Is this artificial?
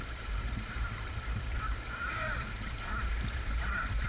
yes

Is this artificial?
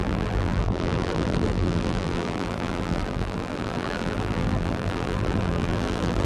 yes